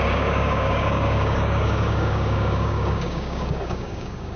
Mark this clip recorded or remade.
remade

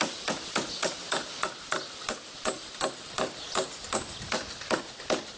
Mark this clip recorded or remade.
recorded